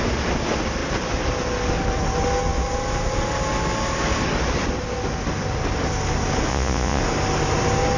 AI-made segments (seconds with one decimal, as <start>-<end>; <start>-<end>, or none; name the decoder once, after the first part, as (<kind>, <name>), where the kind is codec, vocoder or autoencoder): 6.5-7.0 (vocoder, Vocos)